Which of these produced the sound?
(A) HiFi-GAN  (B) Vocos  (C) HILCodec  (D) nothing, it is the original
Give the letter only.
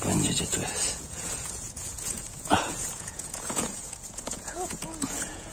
B